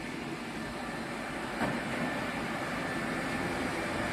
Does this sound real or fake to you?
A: fake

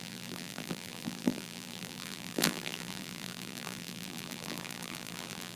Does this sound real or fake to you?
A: fake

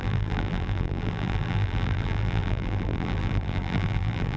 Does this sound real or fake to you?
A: fake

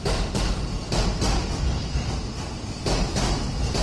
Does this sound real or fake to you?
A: real